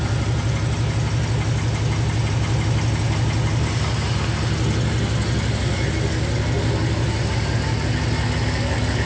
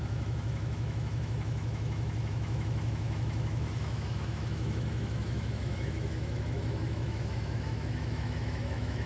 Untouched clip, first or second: first